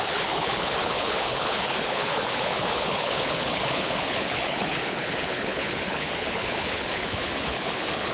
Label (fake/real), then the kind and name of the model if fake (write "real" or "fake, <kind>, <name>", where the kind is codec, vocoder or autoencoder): fake, codec, HILCodec